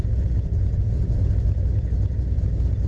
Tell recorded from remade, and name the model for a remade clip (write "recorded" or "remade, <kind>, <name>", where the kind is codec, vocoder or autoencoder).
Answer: recorded